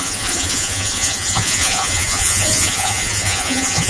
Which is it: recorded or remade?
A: remade